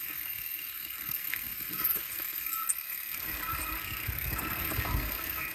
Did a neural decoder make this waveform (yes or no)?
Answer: yes